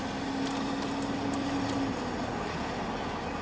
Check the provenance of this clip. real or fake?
real